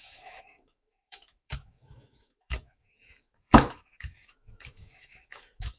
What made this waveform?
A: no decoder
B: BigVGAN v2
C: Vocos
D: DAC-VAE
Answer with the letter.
D